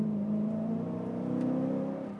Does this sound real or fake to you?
real